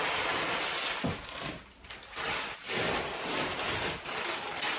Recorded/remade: recorded